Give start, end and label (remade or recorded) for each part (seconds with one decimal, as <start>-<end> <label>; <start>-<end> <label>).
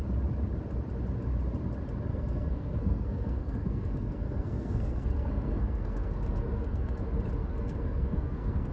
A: 0.0-2.1 recorded; 2.1-7.0 remade; 7.0-7.4 recorded; 7.4-8.7 remade